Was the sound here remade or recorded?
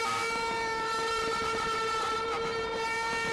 remade